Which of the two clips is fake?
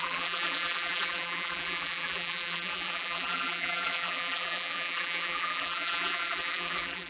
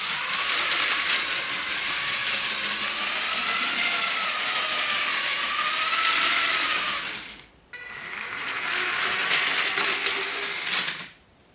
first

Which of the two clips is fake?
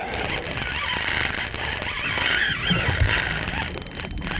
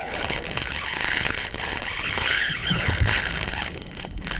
second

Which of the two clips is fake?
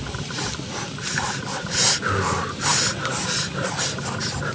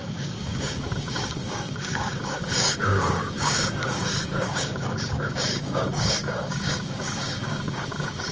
second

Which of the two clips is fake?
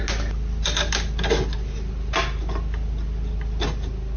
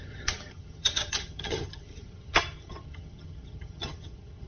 second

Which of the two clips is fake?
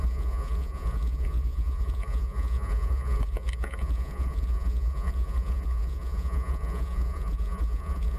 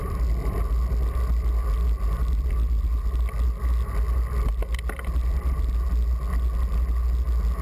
first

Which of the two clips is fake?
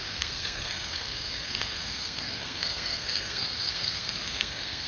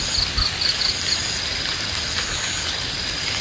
first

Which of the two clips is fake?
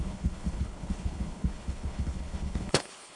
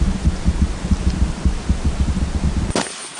first